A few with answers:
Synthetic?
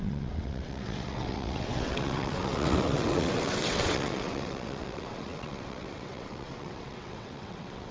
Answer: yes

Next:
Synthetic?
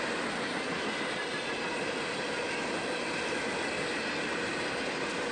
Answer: no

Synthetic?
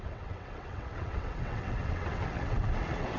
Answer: yes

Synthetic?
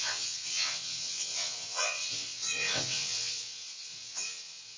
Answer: yes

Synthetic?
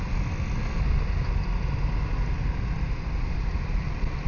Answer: no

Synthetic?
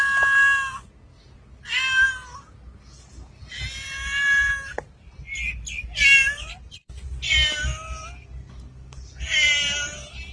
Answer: no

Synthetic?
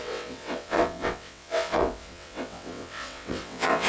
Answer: yes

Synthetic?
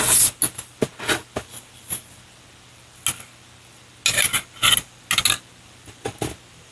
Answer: no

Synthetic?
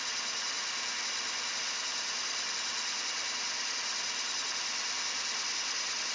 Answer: no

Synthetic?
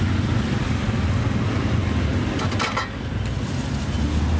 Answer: no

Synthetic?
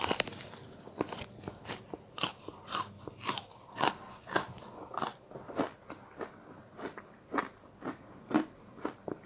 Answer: no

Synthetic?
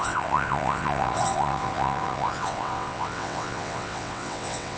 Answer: yes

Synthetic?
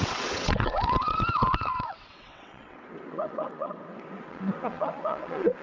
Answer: yes